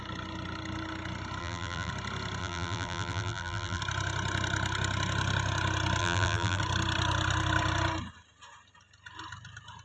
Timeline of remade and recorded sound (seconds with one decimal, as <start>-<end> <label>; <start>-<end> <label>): 0.0-1.4 recorded; 1.4-1.9 remade; 1.9-2.4 recorded; 2.4-3.8 remade; 3.8-6.0 recorded; 6.0-6.6 remade; 6.6-9.8 recorded

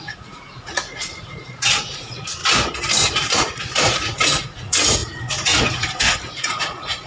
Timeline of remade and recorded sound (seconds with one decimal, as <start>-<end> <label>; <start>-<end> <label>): 0.0-2.4 remade; 2.4-3.1 recorded; 3.1-7.1 remade